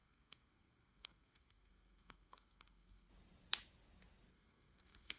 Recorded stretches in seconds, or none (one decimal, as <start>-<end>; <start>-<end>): 3.1-4.3